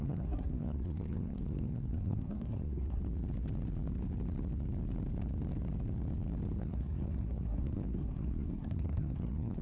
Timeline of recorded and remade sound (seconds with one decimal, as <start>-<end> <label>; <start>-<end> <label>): 0.0-3.0 remade; 3.0-6.6 recorded; 6.6-9.6 remade